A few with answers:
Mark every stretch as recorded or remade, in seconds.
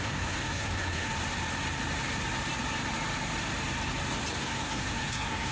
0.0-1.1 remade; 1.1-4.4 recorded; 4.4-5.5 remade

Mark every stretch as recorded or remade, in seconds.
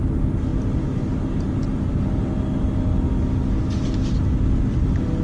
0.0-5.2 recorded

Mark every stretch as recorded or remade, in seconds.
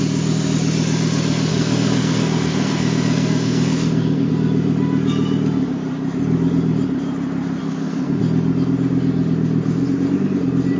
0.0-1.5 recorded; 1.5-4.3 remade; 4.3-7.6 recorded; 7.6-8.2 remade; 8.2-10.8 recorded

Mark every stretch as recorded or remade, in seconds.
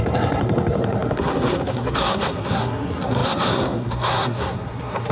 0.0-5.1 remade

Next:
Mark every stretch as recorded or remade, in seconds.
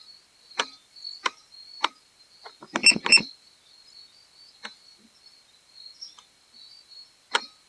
0.0-7.7 recorded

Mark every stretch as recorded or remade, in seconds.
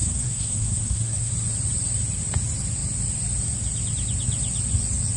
0.0-1.3 remade; 1.3-5.2 recorded